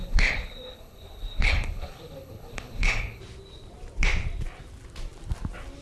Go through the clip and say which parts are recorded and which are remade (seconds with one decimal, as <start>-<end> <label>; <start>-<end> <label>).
0.0-3.2 remade; 3.2-5.8 recorded